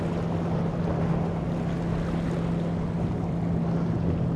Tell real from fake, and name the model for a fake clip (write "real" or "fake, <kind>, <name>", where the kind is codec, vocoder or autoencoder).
real